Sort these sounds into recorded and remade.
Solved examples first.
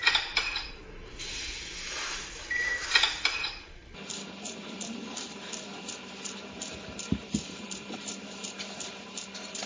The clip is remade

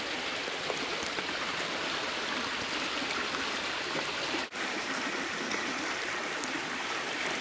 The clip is remade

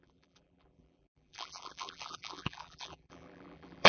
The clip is remade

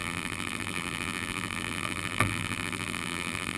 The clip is remade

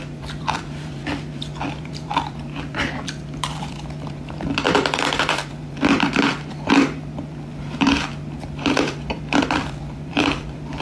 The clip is remade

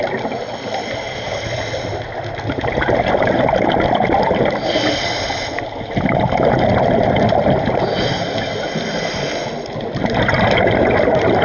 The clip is recorded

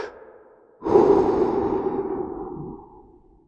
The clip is recorded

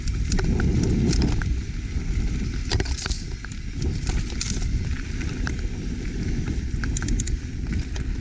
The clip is recorded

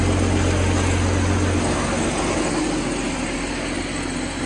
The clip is recorded